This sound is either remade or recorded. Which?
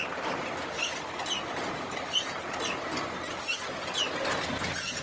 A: recorded